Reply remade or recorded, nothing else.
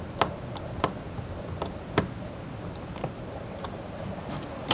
recorded